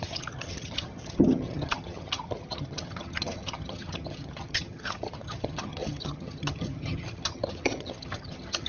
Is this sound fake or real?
fake